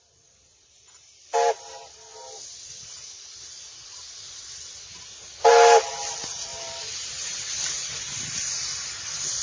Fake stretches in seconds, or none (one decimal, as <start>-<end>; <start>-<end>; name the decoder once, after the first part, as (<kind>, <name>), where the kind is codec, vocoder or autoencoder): 6.5-7.1 (vocoder, BigVGAN v2)